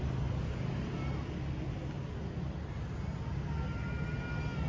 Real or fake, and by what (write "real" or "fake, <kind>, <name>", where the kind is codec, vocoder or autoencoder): real